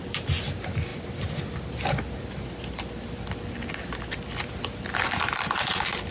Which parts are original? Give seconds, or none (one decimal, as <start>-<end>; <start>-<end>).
0.0-6.1